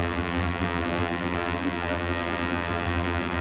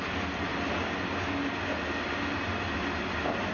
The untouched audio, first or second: second